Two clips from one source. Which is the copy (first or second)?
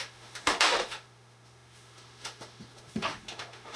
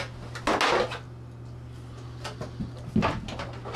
first